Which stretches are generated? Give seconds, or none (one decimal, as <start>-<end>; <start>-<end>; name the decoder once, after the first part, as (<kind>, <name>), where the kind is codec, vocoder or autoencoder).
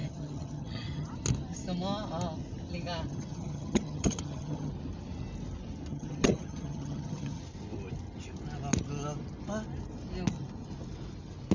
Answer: 0.0-1.1 (vocoder, HiFi-GAN); 3.1-4.7; 5.9-7.4